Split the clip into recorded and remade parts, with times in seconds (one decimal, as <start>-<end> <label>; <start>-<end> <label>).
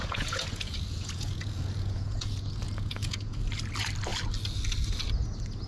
0.0-3.4 remade; 3.4-5.7 recorded